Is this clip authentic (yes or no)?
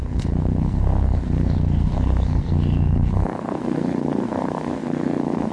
no